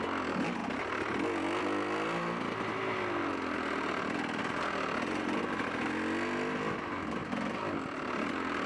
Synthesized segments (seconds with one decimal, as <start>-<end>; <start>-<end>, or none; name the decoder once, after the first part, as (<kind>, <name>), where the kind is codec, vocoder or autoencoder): none